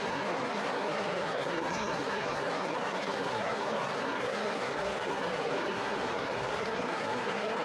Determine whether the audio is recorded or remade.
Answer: remade